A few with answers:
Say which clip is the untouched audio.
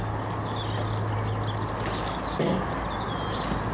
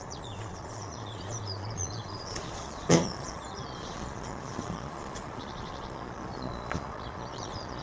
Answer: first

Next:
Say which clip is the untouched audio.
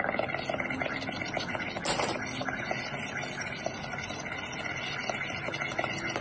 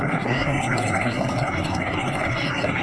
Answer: first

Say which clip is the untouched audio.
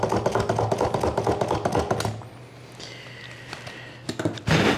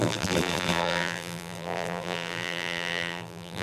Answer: first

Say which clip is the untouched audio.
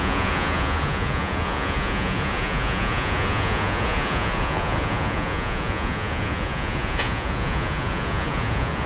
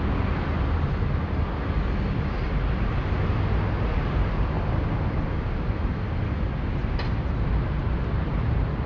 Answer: second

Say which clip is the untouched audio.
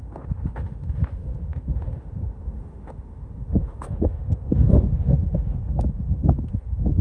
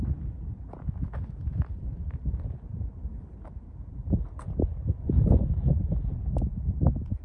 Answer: second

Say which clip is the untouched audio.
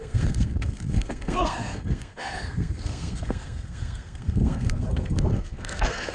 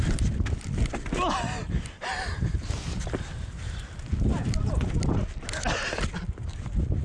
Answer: second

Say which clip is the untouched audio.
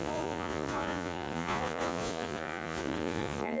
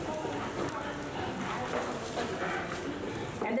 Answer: second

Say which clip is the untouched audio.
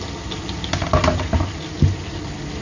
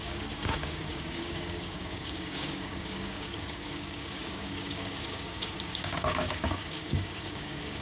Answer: first